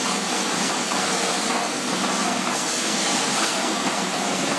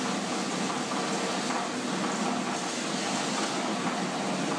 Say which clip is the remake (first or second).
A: first